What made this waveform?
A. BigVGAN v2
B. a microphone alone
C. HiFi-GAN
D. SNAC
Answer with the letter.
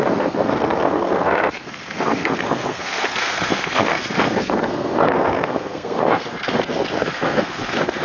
D